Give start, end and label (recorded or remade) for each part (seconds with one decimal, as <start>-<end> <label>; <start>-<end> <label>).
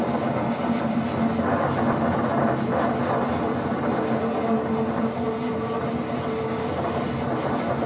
0.0-7.9 recorded